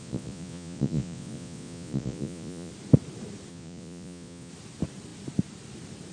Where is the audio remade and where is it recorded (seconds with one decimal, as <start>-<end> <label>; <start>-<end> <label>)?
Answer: 0.0-2.7 remade; 2.7-3.5 recorded; 3.5-4.5 remade; 4.5-6.1 recorded